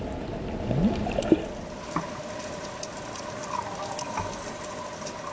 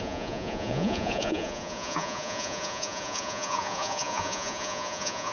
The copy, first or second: second